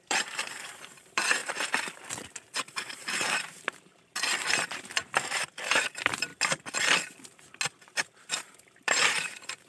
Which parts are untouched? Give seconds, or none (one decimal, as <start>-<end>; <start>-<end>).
1.4-2.9; 6.3-8.4